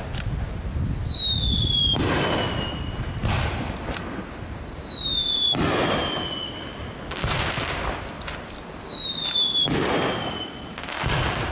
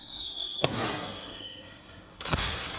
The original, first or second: first